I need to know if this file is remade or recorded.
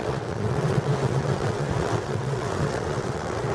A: remade